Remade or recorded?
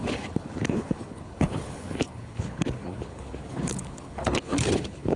remade